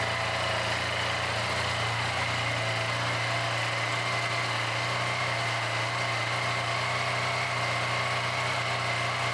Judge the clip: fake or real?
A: real